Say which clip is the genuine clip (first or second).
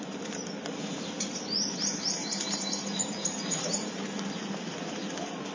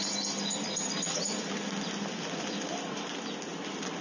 second